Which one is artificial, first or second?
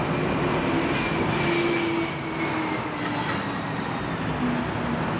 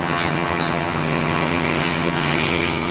second